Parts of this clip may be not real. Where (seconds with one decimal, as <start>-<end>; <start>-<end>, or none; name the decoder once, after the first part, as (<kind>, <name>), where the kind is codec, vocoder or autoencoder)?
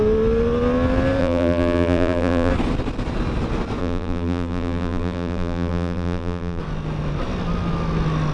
1.2-2.5 (vocoder, BigVGAN v2); 3.8-6.6